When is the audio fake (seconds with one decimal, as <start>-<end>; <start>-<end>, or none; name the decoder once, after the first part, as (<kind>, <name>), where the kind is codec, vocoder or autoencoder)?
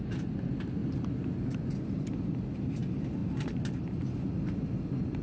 none